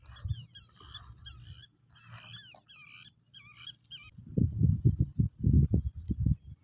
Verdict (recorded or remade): recorded